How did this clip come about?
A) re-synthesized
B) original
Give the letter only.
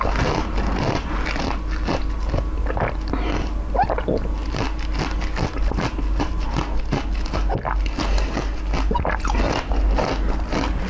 B